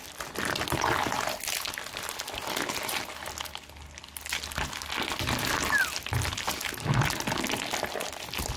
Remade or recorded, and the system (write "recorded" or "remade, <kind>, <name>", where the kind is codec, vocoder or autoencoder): recorded